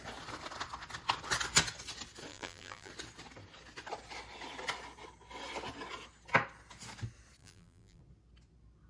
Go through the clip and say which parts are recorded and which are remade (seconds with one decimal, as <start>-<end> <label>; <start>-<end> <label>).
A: 0.0-2.3 recorded; 2.3-2.9 remade; 2.9-7.4 recorded; 7.4-8.0 remade; 8.0-8.9 recorded